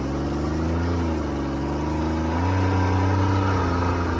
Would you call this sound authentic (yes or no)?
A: yes